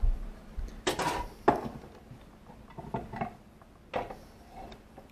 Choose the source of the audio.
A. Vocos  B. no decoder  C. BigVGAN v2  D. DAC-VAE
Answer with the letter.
B